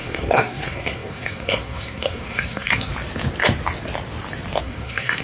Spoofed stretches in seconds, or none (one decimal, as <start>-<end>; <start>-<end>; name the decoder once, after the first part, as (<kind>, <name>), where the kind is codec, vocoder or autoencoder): 0.0-2.9 (codec, SNAC); 4.6-5.2

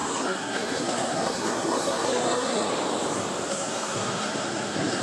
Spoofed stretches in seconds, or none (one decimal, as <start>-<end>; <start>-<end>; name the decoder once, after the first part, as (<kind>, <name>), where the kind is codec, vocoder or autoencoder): 0.0-2.7 (codec, SNAC); 3.5-5.0

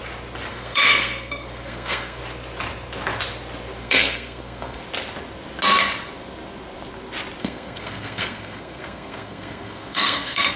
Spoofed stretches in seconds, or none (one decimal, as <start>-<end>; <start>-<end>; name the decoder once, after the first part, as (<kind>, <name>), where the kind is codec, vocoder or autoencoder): 0.5-2.2 (codec, SNAC); 3.8-4.8; 7.4-10.6

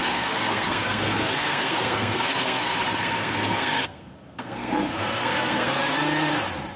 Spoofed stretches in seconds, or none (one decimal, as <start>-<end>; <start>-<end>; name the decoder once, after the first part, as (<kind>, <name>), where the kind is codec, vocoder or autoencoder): 0.0-5.8 (codec, SNAC)